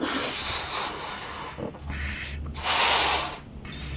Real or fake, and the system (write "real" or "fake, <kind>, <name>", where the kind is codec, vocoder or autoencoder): real